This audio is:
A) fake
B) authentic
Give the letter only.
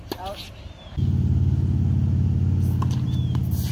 B